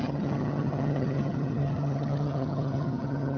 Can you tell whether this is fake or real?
fake